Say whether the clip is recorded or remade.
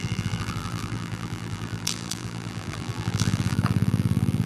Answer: remade